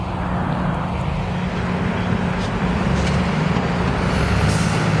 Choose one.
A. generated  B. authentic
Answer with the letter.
B